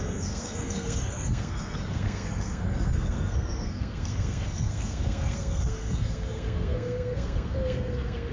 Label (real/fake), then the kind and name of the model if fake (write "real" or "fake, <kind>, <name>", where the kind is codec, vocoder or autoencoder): fake, codec, SNAC